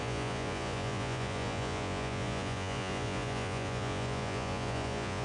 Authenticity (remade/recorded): remade